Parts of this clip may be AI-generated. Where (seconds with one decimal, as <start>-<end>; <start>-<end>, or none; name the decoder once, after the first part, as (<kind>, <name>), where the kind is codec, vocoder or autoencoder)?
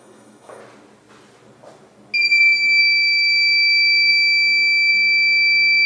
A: 0.0-0.6 (autoencoder, DAC-VAE); 2.8-4.1; 4.9-5.9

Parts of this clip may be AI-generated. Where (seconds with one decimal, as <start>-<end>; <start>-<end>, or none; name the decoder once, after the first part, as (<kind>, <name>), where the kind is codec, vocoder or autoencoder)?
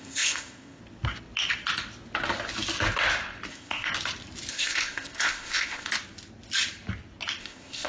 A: 0.0-0.8 (codec, ZipCodec); 3.5-3.9; 4.5-5.9; 7.4-7.9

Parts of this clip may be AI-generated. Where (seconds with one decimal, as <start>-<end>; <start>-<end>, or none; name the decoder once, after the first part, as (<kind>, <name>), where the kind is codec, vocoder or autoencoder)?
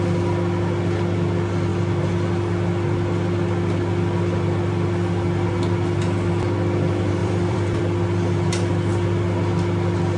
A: 7.2-7.8 (vocoder, BigVGAN v2)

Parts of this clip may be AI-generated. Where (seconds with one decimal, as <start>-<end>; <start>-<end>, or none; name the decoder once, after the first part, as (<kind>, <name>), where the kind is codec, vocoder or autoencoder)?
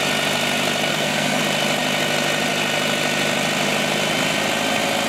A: 0.9-1.4 (codec, SNAC)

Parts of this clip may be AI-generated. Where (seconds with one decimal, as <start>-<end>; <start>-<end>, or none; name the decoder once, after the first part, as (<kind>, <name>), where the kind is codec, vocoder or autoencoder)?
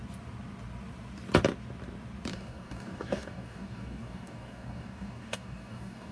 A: 2.3-6.1 (codec, DAC)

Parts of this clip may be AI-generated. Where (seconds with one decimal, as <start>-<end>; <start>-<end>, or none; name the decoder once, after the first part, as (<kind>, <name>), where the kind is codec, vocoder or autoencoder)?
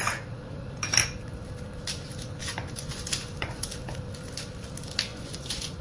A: 2.4-3.6 (vocoder, Vocos); 5.1-5.8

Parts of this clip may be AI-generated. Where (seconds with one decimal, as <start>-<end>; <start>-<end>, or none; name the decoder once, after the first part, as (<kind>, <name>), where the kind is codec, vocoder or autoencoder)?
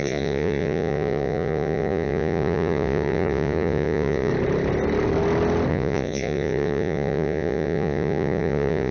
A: 0.0-4.3 (vocoder, Vocos); 5.7-8.9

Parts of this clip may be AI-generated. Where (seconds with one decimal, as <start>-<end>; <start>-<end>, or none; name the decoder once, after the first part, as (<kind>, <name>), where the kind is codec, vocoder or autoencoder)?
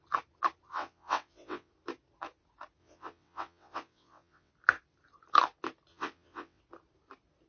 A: 0.7-1.7 (vocoder, WaveNeXt); 2.8-4.5; 5.9-6.6